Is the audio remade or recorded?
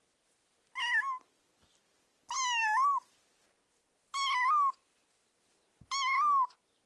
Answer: recorded